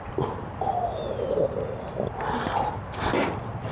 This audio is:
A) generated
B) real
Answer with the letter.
B